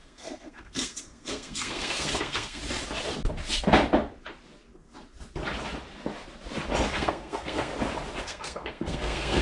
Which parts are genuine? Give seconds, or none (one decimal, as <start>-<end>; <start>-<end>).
2.6-6.9; 7.7-8.2